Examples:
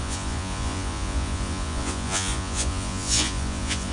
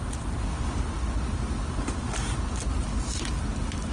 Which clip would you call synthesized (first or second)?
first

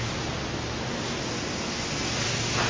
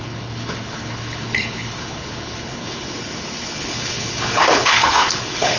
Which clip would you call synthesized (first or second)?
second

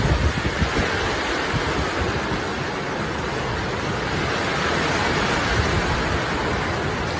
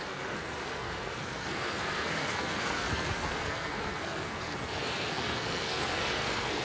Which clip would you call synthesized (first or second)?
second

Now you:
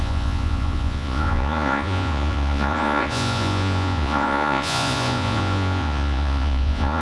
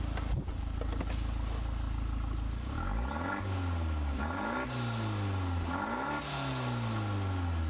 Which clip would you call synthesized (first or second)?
first